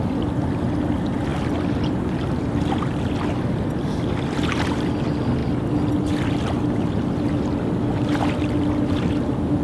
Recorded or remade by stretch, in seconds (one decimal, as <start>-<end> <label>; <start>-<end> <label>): 0.0-9.6 recorded